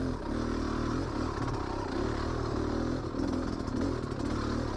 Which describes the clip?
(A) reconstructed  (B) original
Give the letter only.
B